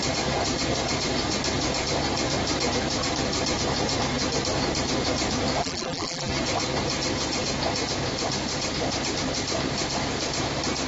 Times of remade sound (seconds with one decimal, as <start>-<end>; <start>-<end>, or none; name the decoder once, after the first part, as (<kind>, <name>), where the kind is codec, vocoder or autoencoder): 5.6-6.3 (vocoder, BigVGAN v2)